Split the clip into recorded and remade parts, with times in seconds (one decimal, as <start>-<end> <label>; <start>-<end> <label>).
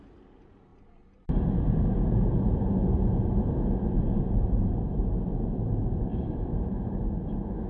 0.0-6.1 recorded; 6.1-7.7 remade